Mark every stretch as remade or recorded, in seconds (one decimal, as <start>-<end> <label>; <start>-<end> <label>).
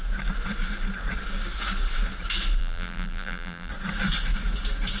0.0-2.6 recorded; 2.6-3.7 remade; 3.7-5.0 recorded